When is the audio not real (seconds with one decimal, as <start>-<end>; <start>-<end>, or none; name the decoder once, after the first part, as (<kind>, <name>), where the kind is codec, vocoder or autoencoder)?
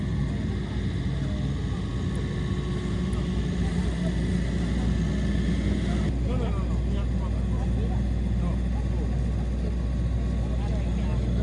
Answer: none